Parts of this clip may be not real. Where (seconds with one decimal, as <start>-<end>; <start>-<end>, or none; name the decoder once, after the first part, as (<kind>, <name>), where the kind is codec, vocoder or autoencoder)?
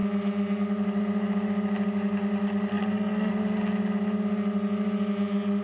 2.7-3.3 (codec, SNAC)